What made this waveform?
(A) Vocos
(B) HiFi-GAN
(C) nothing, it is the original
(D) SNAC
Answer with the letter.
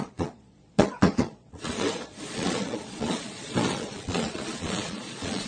A